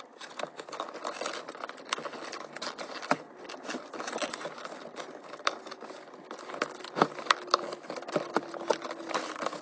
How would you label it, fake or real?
real